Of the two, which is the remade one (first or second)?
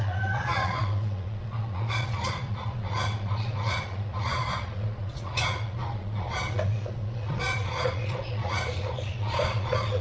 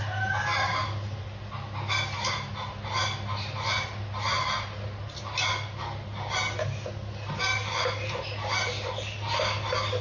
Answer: first